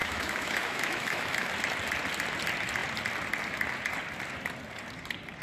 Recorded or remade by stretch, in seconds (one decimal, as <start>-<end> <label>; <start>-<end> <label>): 0.0-1.5 remade; 1.5-5.4 recorded